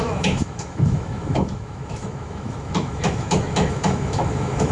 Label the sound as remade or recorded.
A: remade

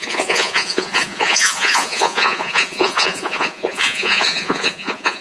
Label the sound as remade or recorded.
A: remade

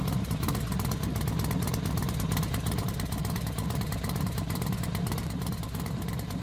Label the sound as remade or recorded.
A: remade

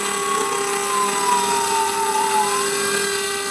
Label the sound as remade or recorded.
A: recorded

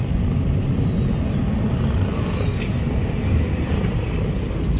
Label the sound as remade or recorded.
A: recorded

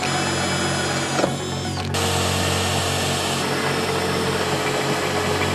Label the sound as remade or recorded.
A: recorded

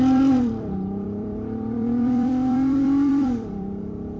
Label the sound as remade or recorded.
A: remade